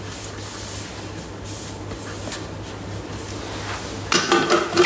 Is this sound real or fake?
real